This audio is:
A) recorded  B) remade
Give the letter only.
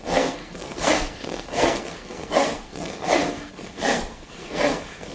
B